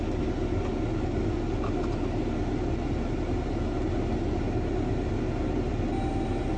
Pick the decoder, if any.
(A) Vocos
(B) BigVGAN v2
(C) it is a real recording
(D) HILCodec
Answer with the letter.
C